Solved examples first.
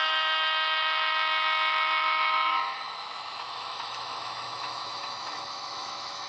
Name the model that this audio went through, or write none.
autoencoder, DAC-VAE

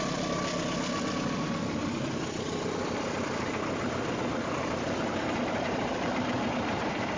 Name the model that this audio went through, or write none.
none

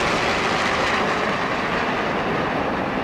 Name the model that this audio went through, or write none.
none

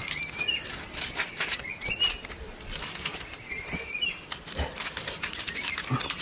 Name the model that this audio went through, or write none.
none